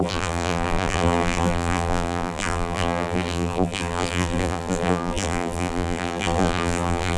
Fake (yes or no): yes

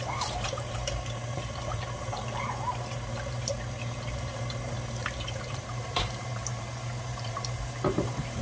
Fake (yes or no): yes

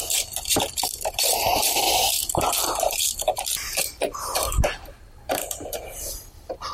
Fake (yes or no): yes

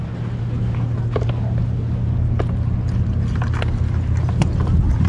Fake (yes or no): no